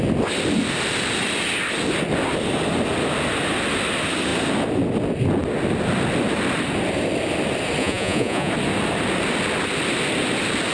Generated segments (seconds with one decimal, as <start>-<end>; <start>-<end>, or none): 7.8-8.5